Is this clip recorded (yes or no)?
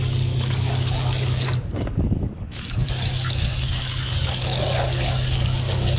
no